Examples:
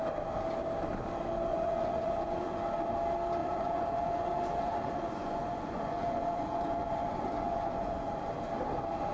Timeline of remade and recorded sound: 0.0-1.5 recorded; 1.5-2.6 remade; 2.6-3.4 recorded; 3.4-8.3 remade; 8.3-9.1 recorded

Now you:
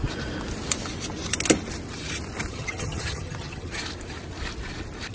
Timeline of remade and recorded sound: 0.0-2.5 recorded; 2.5-3.8 remade; 3.8-5.1 recorded

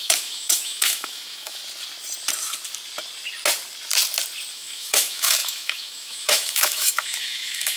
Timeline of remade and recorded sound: 0.0-1.6 remade; 1.6-4.5 recorded; 4.5-7.8 remade

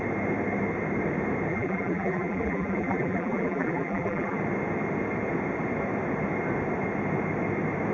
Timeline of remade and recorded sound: 0.0-1.5 recorded; 1.5-4.4 remade; 4.4-7.9 recorded

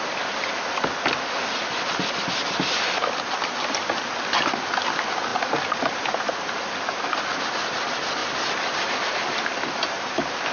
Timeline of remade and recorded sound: 0.0-10.5 recorded

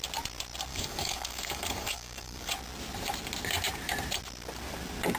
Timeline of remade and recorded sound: 0.0-0.7 recorded; 0.7-2.5 remade; 2.5-5.2 recorded